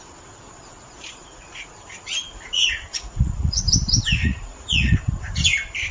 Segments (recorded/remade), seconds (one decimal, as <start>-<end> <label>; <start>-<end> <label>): 0.0-1.2 recorded; 1.2-1.7 remade; 1.7-2.9 recorded; 2.9-3.6 remade; 3.6-4.2 recorded; 4.2-5.0 remade; 5.0-5.9 recorded

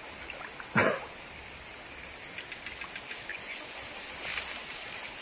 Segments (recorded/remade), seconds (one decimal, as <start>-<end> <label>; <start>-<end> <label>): 0.0-3.3 recorded; 3.3-3.8 remade; 3.8-5.2 recorded